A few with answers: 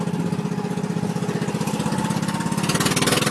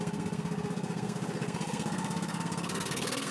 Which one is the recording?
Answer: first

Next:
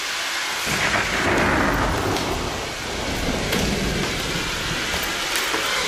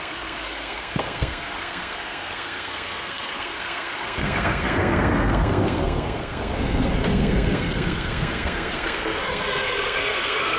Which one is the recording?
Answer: first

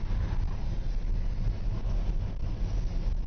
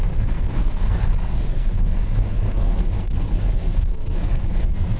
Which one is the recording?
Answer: first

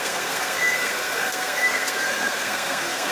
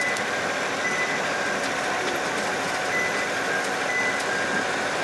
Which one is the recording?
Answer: second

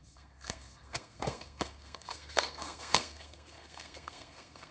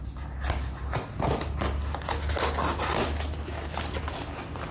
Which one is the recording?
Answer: second